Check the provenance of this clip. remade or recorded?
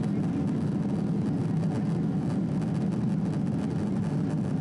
recorded